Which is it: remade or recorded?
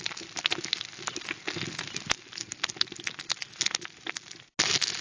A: recorded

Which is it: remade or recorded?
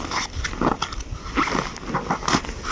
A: recorded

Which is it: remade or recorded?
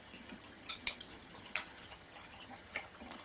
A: remade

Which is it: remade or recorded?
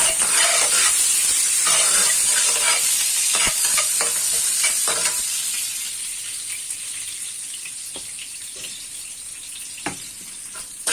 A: remade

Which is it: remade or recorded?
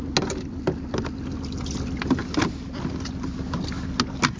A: recorded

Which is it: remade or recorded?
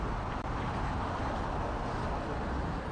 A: recorded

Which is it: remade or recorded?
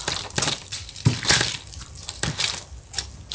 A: remade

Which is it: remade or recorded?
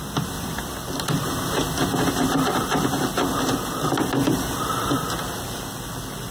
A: recorded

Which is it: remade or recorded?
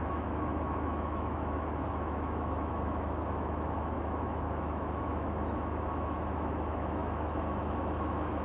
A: remade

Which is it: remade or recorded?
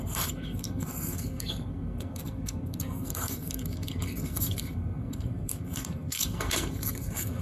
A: remade